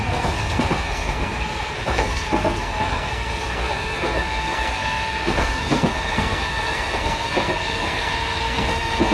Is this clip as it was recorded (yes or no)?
no